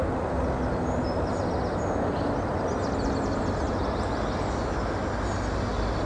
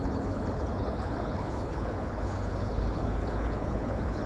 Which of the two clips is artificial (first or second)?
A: second